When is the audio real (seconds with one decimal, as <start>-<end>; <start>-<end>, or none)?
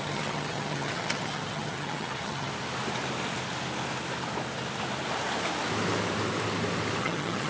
2.5-7.0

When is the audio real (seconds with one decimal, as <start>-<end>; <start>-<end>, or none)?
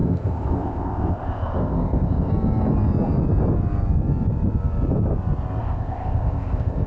2.3-5.6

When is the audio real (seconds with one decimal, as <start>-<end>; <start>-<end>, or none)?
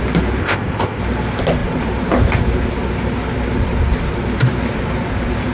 0.0-0.4; 1.0-5.5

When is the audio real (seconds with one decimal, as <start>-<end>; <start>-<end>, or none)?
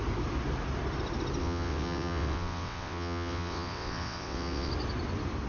0.0-1.4; 4.7-5.5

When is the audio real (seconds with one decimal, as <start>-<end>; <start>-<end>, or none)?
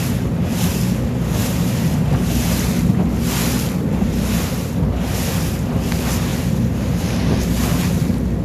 0.0-1.4; 2.1-6.3; 7.2-8.4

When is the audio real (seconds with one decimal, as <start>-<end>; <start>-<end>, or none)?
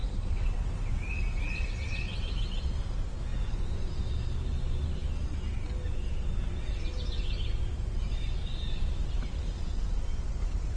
2.6-10.8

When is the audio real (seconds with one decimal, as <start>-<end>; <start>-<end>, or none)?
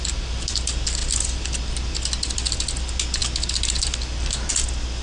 0.0-5.0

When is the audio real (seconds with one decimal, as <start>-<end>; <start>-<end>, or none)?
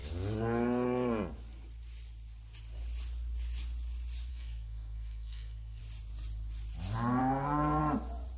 0.0-4.3; 5.8-7.2; 7.8-8.4